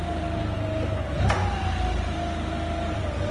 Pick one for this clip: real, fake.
real